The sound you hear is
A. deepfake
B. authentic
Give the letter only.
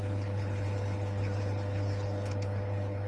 A